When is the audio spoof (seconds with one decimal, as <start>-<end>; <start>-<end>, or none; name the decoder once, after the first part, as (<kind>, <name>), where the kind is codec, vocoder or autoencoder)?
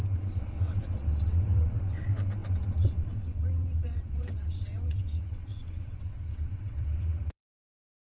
0.0-8.2 (vocoder, WaveNeXt)